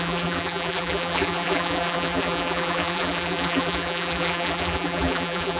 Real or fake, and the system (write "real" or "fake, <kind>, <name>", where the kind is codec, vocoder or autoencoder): fake, vocoder, BigVGAN v2